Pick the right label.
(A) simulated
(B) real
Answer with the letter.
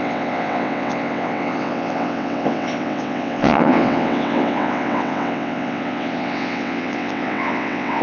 A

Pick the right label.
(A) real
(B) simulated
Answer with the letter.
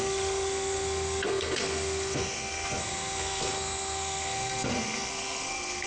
B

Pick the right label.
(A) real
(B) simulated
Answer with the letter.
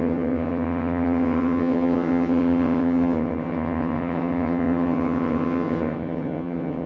B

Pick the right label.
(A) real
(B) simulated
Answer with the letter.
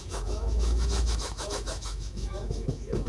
B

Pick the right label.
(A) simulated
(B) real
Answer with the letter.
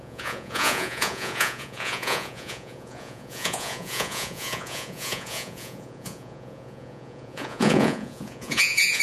A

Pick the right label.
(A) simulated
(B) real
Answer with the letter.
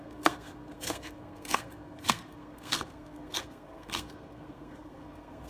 A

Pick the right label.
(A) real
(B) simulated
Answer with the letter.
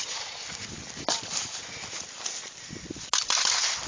A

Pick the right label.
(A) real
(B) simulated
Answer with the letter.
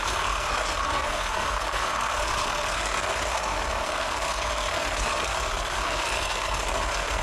B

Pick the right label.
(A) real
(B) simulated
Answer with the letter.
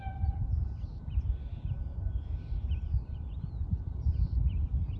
B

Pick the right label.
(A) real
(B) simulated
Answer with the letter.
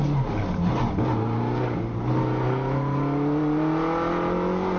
A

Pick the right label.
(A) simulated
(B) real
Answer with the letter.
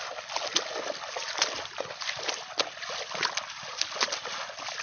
B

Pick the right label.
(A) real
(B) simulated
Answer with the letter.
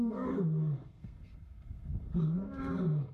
B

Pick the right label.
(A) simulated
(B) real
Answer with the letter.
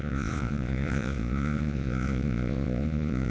A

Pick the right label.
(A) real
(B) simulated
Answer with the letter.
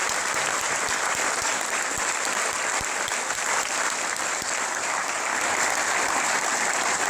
B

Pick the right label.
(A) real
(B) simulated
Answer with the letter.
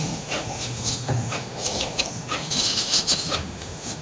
B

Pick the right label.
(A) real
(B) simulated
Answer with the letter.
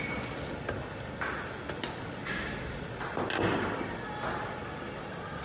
A